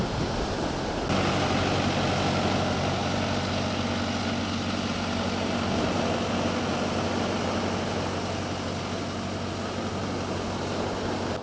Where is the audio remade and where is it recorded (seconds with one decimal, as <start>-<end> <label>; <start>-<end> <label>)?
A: 0.0-11.4 recorded